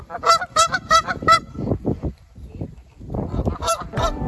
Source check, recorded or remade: remade